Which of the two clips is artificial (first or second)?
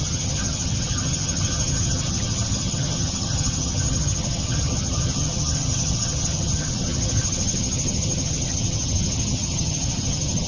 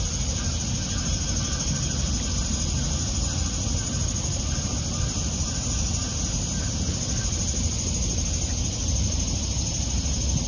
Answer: first